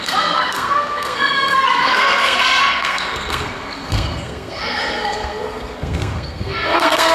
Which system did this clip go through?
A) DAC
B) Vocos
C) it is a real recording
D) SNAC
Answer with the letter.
D